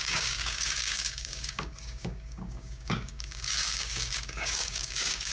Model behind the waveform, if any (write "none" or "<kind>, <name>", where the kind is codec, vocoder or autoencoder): codec, DAC